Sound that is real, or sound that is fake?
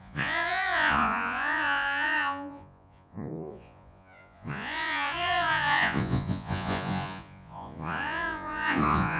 fake